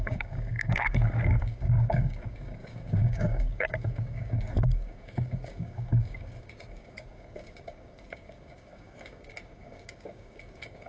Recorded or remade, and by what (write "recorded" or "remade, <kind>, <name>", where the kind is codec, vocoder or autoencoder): remade, codec, DAC